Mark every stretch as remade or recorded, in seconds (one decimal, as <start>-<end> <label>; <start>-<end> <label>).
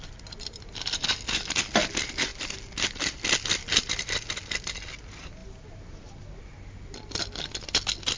0.0-5.4 recorded; 5.4-6.1 remade; 6.1-8.2 recorded